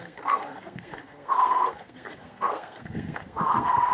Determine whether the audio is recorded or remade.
remade